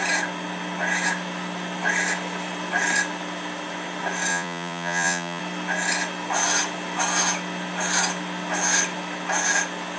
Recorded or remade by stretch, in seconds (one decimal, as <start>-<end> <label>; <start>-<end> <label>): 0.0-4.3 recorded; 4.3-5.4 remade; 5.4-10.0 recorded